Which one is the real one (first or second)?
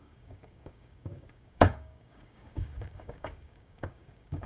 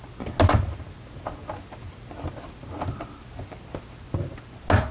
second